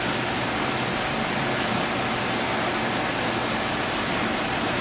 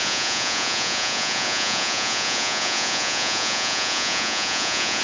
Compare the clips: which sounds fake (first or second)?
second